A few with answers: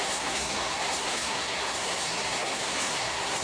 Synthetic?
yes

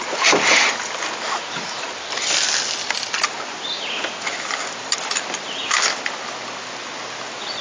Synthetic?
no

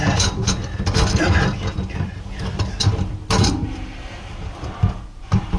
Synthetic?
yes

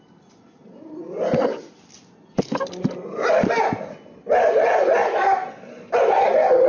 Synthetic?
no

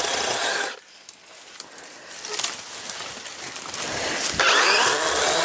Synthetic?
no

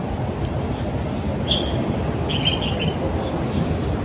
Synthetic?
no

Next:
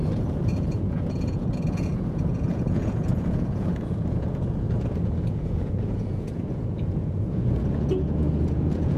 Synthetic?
yes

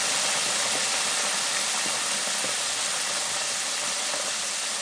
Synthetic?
no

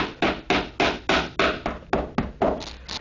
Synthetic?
no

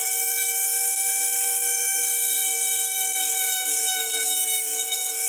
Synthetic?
yes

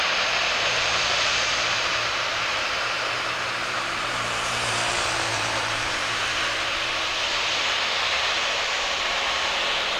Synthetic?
yes